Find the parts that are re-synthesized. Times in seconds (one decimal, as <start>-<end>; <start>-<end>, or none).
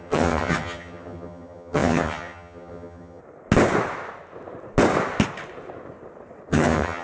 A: 0.0-3.2; 6.5-7.0